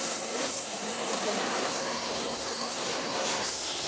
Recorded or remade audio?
remade